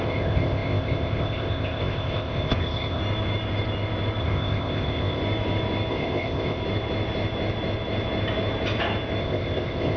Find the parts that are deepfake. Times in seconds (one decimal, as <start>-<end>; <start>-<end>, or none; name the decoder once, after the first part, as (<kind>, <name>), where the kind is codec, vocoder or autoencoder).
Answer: 0.0-3.0 (codec, ZipCodec); 4.2-5.2; 5.9-6.6; 9.2-10.0